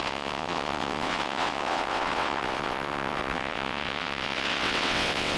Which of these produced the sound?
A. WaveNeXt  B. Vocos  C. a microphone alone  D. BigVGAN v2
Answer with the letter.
A